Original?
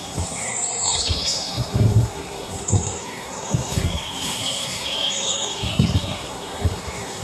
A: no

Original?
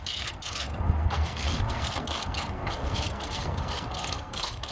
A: no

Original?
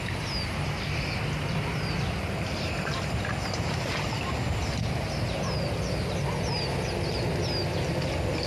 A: yes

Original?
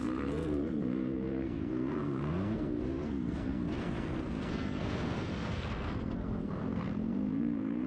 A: no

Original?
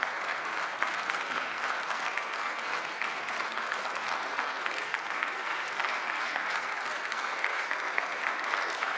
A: no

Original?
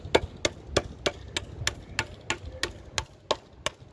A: yes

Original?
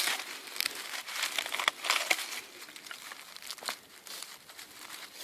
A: yes